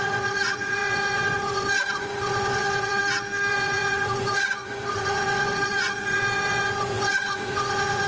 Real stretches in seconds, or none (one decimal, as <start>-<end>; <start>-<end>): 3.0-3.5